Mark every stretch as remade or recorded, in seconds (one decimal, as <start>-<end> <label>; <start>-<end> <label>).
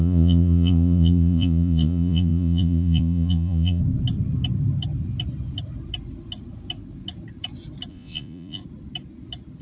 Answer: 0.0-3.8 remade; 3.8-7.9 recorded; 7.9-8.6 remade; 8.6-9.6 recorded